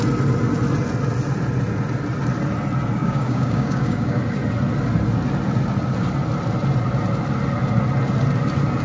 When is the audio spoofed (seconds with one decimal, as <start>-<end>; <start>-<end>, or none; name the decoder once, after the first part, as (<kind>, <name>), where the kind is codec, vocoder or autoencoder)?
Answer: 3.0-4.2 (codec, DAC)